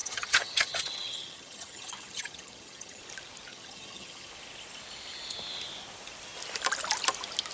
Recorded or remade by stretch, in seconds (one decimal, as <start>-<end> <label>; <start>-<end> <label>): 0.0-3.0 remade; 3.0-3.5 recorded; 3.5-4.3 remade; 4.3-7.5 recorded